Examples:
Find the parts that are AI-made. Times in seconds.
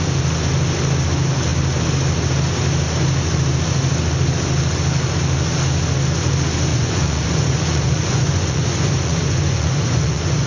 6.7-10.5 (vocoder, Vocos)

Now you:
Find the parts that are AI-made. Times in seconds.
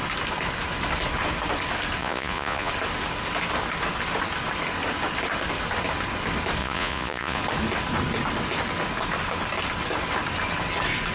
2.0-2.7 (vocoder, Vocos); 6.6-7.4